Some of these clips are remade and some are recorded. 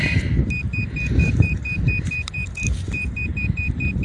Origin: remade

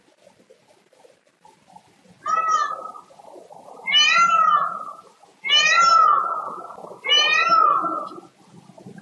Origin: recorded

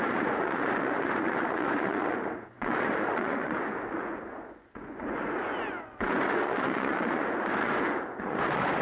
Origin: remade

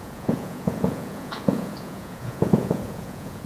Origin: remade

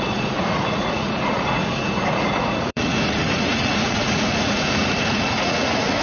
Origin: remade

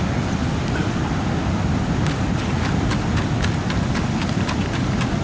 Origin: recorded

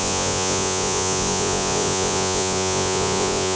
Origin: remade